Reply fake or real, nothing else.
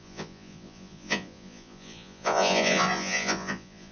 fake